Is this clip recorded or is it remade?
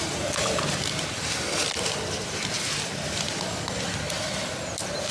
recorded